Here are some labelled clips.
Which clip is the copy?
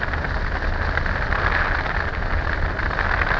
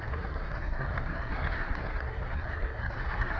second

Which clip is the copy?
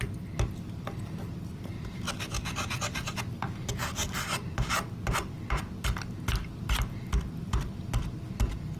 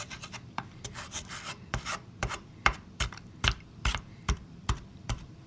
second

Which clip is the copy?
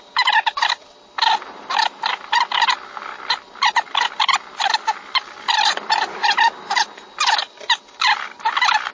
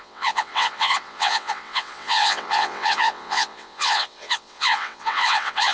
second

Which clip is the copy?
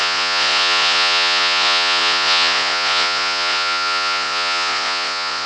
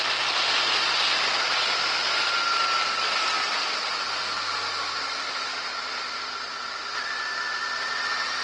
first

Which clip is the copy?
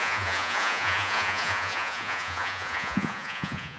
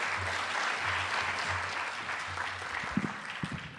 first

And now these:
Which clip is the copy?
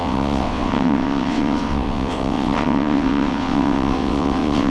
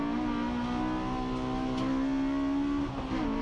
first